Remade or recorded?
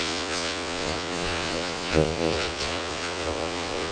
remade